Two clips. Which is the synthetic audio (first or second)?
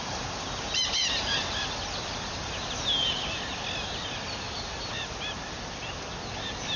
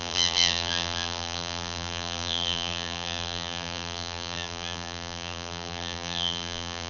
second